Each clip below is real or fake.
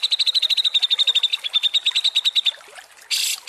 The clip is real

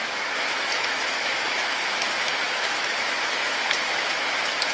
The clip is fake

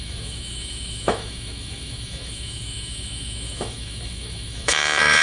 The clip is fake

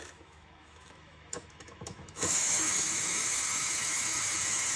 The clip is fake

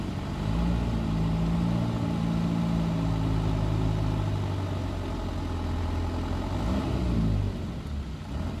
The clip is real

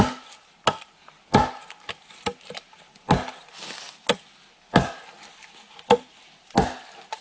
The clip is real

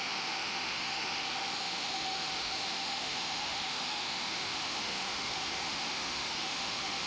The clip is fake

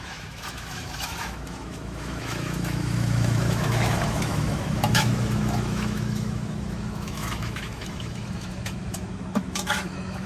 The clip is fake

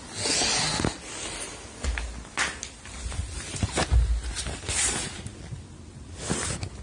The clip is real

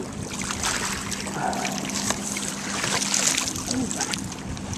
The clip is real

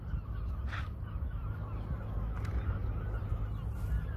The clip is real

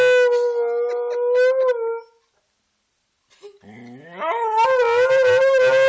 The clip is real